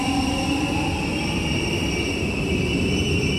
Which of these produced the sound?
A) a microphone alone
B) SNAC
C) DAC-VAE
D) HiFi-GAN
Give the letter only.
A